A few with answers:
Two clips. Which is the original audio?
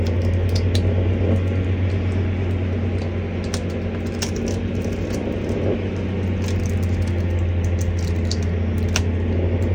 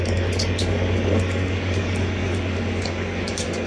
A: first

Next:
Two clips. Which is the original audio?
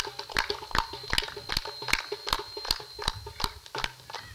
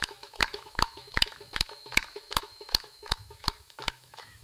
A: first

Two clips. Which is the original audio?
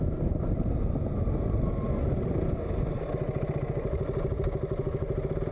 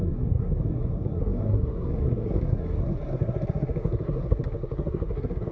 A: first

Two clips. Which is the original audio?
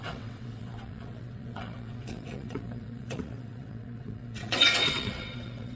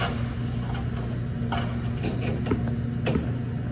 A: second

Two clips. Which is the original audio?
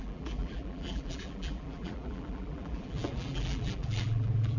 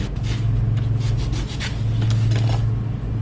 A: second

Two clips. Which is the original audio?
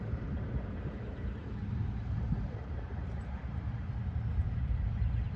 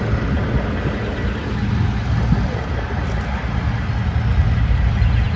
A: second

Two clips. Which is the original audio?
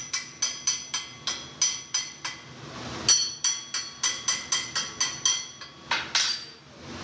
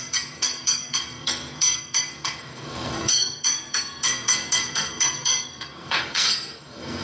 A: first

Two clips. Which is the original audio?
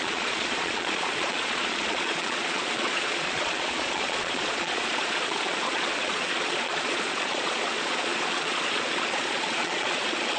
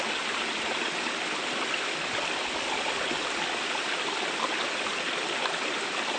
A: second